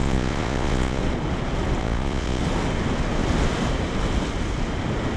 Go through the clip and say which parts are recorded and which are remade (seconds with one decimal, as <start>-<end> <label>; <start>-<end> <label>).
0.0-1.0 remade; 1.0-1.8 recorded; 1.8-2.4 remade; 2.4-5.2 recorded